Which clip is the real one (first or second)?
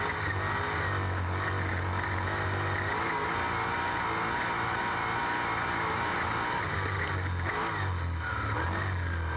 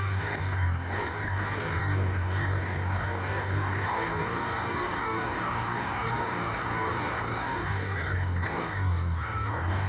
first